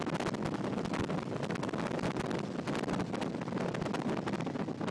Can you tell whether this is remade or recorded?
recorded